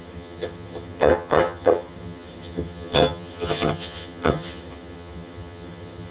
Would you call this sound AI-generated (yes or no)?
yes